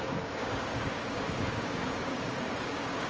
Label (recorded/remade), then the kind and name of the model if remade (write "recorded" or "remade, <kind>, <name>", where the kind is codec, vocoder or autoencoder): remade, codec, DAC